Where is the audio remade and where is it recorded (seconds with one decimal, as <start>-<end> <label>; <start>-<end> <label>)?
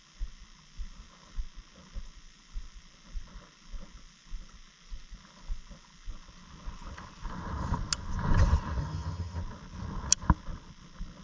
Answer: 0.0-8.8 recorded; 8.8-9.4 remade; 9.4-11.2 recorded